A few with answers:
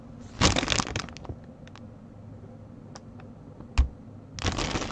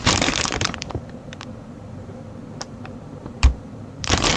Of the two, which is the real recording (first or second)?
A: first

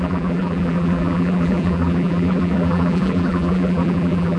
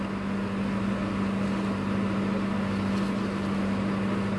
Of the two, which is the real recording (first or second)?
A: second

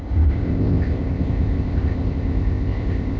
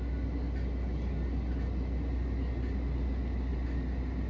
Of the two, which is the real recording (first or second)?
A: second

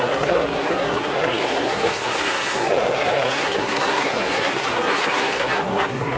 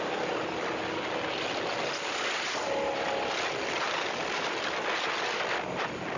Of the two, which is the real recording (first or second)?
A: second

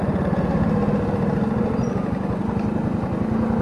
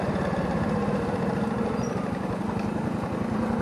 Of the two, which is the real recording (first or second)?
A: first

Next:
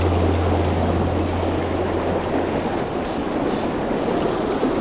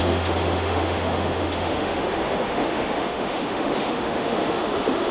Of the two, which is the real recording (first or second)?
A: first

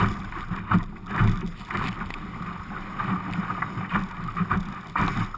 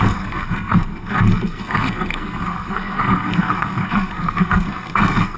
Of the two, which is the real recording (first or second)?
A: first